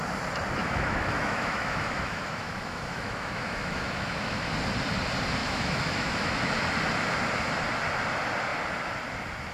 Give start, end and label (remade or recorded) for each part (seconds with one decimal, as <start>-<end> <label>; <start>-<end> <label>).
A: 0.0-0.6 recorded; 0.6-4.5 remade; 4.5-5.4 recorded; 5.4-6.5 remade; 6.5-9.5 recorded